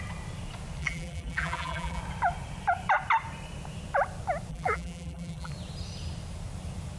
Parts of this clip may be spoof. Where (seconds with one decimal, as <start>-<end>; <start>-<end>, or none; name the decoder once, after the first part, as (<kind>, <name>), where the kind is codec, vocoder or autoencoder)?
0.8-2.0 (vocoder, BigVGAN v2); 4.5-5.5